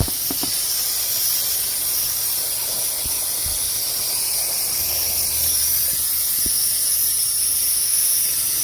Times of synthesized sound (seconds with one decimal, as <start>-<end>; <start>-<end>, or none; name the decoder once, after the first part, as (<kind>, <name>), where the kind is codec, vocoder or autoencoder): 7.7-8.2 (autoencoder, DAC-VAE)